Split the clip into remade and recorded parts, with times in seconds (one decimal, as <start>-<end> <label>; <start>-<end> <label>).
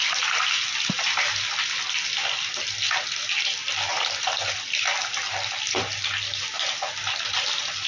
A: 0.0-7.9 recorded